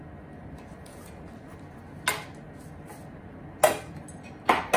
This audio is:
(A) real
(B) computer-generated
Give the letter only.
A